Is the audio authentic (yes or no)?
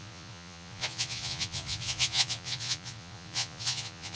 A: no